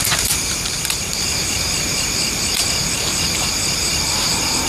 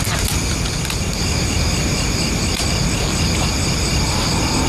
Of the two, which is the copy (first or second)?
first